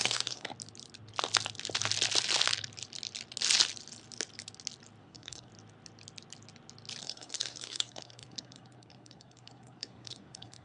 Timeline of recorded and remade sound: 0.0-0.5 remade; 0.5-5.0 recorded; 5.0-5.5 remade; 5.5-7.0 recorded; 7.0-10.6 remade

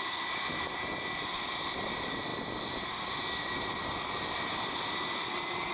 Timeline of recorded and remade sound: 0.0-5.7 recorded

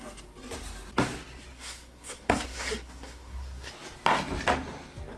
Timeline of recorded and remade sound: 0.0-1.5 recorded; 1.5-3.7 remade; 3.7-5.2 recorded

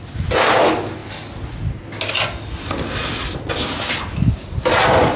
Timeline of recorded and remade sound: 0.0-5.2 recorded

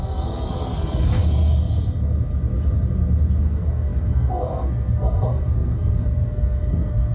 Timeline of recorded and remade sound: 0.0-1.2 remade; 1.2-3.4 recorded; 3.4-7.1 remade

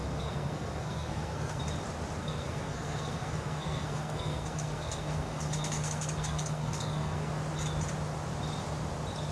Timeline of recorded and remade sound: 0.0-1.6 remade; 1.6-2.2 recorded; 2.2-7.3 remade; 7.3-9.3 recorded

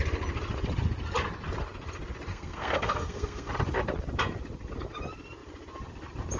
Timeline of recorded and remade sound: 0.0-2.3 recorded; 2.3-3.5 remade; 3.5-6.4 recorded